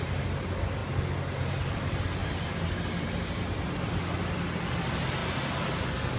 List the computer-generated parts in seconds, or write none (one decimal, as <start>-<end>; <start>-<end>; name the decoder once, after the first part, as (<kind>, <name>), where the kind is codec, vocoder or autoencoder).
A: 2.2-2.7 (vocoder, BigVGAN v2); 5.2-6.2